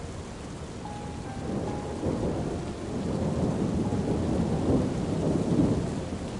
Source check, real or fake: real